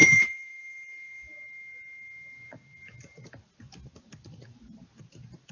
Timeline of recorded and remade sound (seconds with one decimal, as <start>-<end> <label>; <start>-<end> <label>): 0.0-0.5 remade; 0.5-5.5 recorded